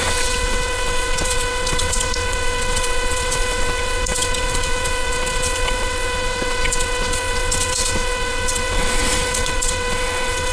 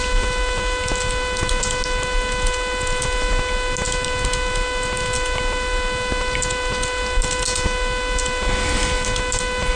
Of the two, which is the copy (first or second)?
first